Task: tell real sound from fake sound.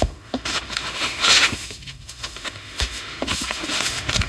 fake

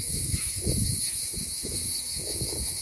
fake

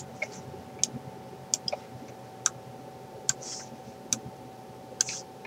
real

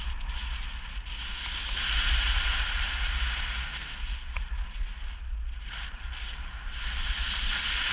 real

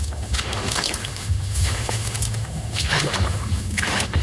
fake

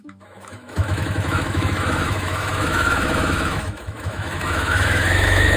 fake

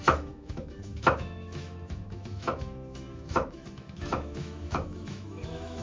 fake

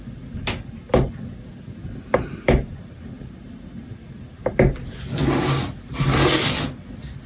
real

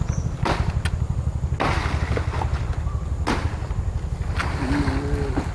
real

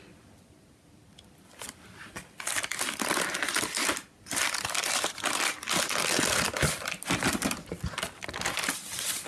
real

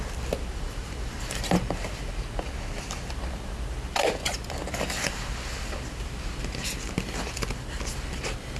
real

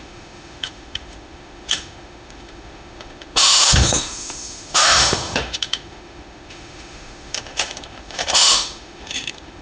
fake